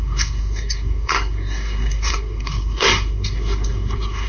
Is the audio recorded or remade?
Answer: remade